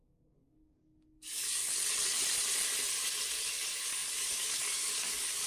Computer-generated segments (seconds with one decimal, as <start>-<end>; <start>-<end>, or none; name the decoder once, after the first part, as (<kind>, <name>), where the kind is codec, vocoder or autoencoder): 0.0-1.6 (codec, DAC); 3.3-5.5